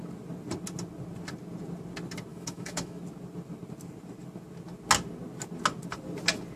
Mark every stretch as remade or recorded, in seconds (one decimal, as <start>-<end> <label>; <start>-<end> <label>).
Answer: 0.0-2.3 recorded; 2.3-3.0 remade; 3.0-6.6 recorded